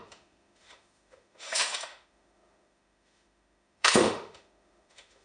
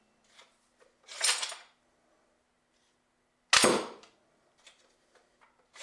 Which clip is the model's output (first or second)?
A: first